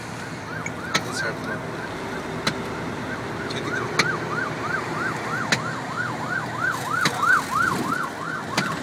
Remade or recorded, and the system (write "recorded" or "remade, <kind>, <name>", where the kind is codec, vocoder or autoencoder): recorded